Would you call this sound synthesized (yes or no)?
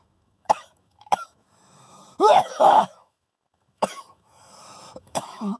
yes